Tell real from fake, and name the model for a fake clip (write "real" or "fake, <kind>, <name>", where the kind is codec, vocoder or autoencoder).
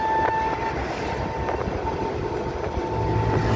real